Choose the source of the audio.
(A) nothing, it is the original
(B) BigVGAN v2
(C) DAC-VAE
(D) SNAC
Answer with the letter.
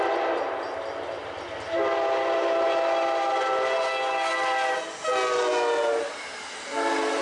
A